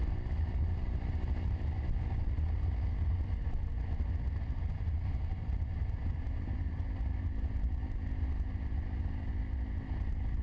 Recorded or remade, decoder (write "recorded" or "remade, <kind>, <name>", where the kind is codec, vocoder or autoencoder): recorded